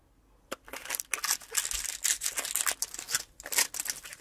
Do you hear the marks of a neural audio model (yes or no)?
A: no